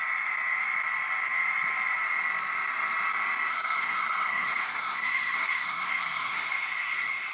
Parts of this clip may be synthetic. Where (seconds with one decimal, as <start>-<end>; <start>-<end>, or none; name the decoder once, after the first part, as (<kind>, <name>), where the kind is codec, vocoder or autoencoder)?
3.5-7.3 (codec, SNAC)